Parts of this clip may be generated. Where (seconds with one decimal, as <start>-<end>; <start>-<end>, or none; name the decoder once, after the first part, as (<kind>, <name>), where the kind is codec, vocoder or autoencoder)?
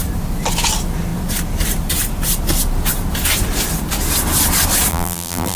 4.9-5.6 (vocoder, BigVGAN v2)